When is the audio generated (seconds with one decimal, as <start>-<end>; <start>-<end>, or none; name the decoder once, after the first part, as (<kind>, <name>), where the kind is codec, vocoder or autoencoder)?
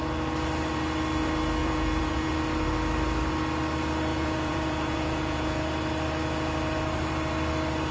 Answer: 1.6-2.3 (vocoder, Vocos); 4.1-5.6